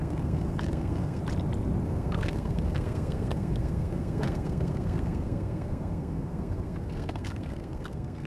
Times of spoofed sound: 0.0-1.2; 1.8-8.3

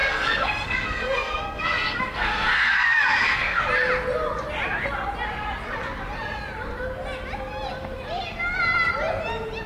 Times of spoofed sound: 0.0-3.6

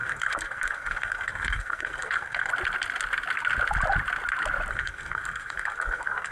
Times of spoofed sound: 0.0-2.5; 4.7-6.3

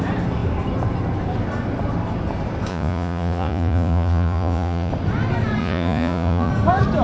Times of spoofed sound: 2.7-4.9; 5.6-6.5

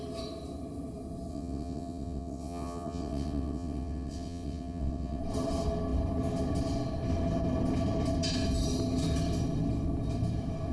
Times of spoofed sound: 1.3-5.2